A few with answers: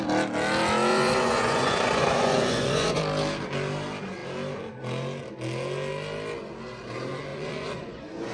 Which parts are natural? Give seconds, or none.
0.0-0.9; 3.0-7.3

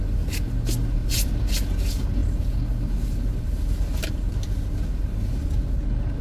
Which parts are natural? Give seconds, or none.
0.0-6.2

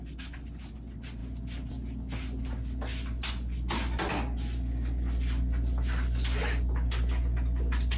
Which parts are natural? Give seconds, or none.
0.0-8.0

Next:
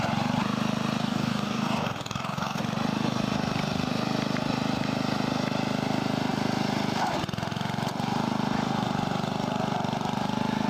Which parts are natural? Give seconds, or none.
0.0-1.0; 2.6-10.7

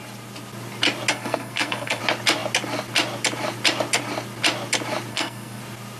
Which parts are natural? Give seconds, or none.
0.0-1.1; 2.0-5.1; 5.6-6.0